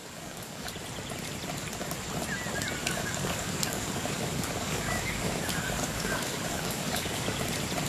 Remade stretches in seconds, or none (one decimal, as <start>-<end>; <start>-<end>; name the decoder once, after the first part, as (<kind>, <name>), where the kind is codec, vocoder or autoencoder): 0.0-0.7 (codec, DAC); 2.8-7.5